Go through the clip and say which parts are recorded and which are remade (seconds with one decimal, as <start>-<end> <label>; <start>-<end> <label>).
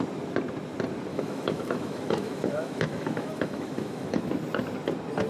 0.0-1.1 recorded; 1.1-4.3 remade; 4.3-5.3 recorded